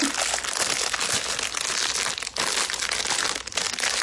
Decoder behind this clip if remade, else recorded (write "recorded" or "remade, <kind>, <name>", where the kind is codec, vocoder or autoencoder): recorded